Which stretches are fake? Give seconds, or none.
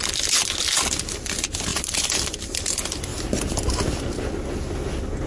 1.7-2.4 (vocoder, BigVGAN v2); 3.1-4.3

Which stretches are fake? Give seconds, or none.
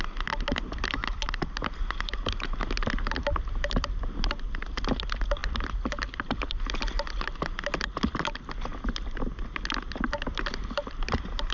5.4-6.7 (vocoder, BigVGAN v2)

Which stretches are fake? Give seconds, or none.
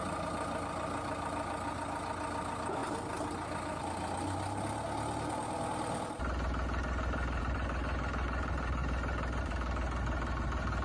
none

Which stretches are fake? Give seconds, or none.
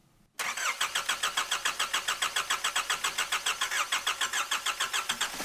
none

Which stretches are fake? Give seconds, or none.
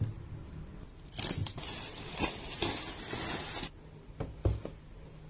none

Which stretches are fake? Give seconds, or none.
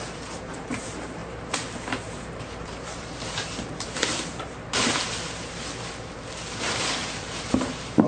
0.0-8.1 (vocoder, BigVGAN v2)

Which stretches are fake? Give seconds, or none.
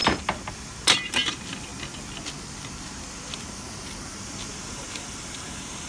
0.5-1.7 (vocoder, BigVGAN v2); 4.6-5.9